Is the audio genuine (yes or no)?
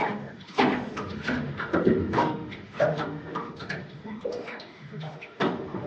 no